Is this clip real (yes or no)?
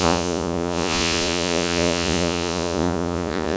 no